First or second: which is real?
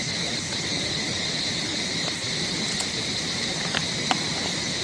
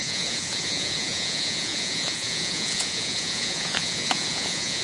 first